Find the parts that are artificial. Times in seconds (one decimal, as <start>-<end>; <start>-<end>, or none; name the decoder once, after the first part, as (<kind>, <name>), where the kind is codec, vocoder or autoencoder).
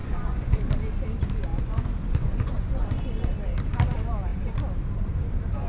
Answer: 0.0-0.7 (vocoder, Vocos); 1.5-3.0